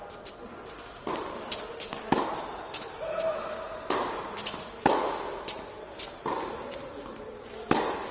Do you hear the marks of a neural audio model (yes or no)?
no